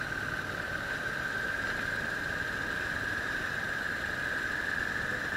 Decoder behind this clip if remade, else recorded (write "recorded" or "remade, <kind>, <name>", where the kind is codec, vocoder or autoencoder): remade, vocoder, BigVGAN v2